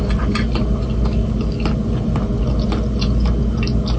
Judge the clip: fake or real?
real